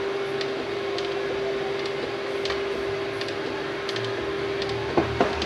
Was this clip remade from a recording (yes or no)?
no